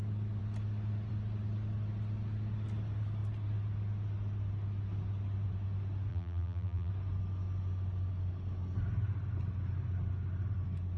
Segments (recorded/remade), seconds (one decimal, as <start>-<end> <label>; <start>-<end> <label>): 0.0-6.1 recorded; 6.1-6.9 remade; 6.9-11.0 recorded